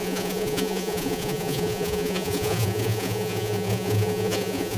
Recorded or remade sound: remade